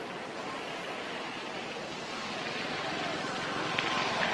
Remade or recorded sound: recorded